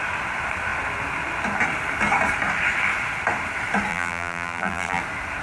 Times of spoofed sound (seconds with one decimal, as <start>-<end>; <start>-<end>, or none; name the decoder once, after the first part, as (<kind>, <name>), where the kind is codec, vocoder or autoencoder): 3.9-5.0 (vocoder, BigVGAN v2)

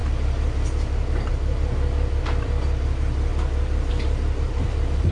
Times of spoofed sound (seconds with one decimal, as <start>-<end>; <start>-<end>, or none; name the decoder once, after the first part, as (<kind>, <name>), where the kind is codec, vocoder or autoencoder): 1.3-3.3 (vocoder, BigVGAN v2); 3.9-5.1

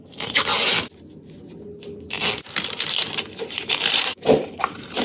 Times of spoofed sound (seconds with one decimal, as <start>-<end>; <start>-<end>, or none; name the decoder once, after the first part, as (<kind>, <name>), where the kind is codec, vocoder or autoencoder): 0.0-0.5 (vocoder, BigVGAN v2); 3.5-5.0